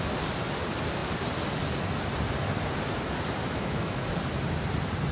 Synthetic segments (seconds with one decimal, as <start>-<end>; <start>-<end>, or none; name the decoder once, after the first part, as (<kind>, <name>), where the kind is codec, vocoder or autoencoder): 3.4-4.1 (autoencoder, DAC-VAE)